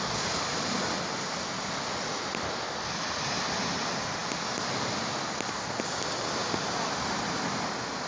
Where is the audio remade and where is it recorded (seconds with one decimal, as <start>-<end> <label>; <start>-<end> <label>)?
0.0-8.1 recorded